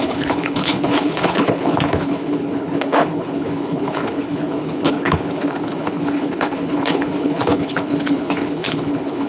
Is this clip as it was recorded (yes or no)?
no